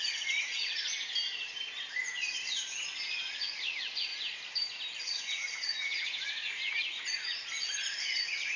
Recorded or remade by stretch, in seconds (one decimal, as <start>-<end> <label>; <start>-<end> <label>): 0.0-0.7 remade; 0.7-1.9 recorded; 1.9-4.1 remade; 4.1-5.0 recorded; 5.0-8.6 remade